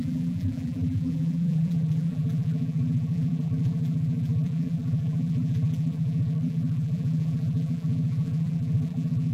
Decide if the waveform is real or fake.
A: fake